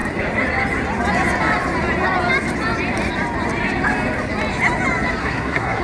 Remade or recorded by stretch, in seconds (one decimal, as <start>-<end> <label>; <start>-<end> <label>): 0.0-5.2 recorded; 5.2-5.8 remade